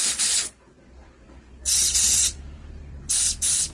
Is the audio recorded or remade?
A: remade